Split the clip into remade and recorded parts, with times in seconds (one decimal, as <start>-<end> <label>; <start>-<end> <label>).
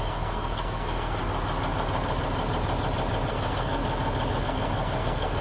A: 0.0-1.2 remade; 1.2-3.3 recorded; 3.3-3.8 remade; 3.8-4.4 recorded; 4.4-5.4 remade